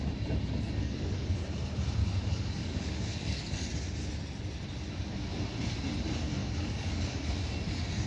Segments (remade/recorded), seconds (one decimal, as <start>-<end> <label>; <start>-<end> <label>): 0.0-0.8 recorded; 0.8-1.4 remade; 1.4-2.0 recorded; 2.0-3.7 remade; 3.7-6.4 recorded; 6.4-7.3 remade; 7.3-8.1 recorded